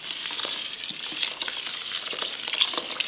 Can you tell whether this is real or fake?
fake